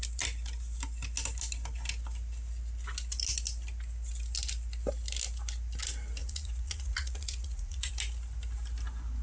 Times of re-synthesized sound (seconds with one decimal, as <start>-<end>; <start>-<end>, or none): 6.2-7.9